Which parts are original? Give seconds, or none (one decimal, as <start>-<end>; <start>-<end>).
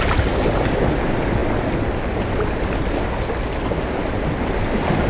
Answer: 0.0-5.1